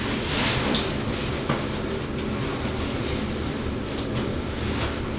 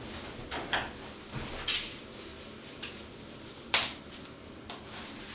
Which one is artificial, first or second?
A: second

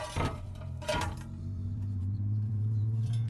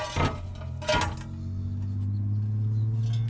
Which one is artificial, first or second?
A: first